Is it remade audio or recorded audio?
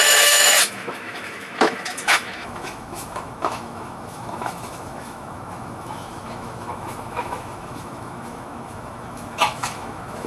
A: remade